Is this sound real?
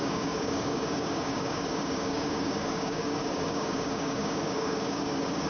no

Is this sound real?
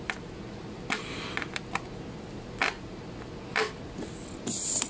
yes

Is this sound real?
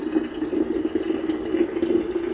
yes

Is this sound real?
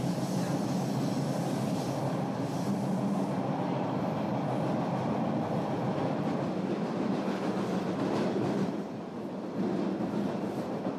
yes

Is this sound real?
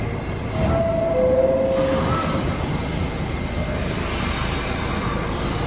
yes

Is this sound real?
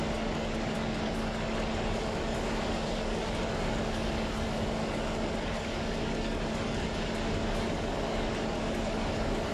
no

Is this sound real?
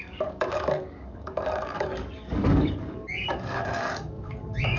no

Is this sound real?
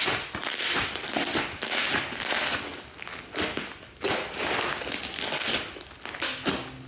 yes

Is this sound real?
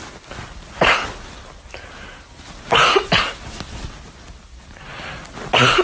yes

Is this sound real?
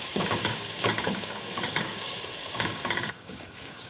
no